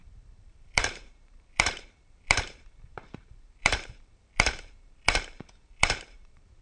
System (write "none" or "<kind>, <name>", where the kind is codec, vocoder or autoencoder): vocoder, BigVGAN v2